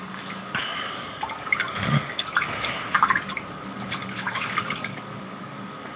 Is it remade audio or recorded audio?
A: remade